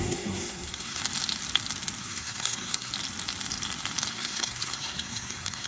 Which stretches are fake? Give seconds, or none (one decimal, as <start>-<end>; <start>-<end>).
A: 0.0-1.0; 2.0-2.9; 4.1-5.7